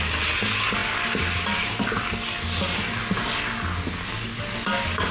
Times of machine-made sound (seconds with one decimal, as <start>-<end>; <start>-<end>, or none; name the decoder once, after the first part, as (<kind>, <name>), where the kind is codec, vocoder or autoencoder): none